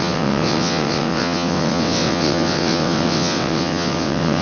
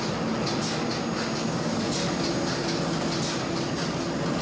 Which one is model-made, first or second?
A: first